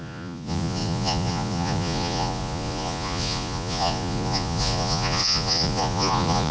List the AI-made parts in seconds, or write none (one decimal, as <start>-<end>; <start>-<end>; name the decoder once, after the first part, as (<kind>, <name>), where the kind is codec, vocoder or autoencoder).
0.0-6.5 (vocoder, Vocos)